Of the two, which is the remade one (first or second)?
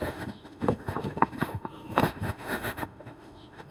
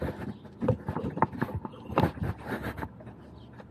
first